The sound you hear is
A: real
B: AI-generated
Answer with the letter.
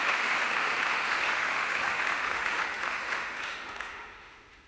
B